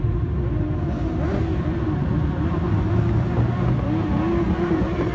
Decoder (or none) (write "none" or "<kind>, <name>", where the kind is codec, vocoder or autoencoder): none